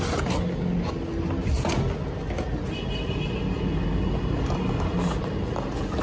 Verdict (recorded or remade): recorded